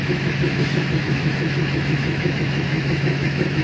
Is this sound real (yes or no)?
no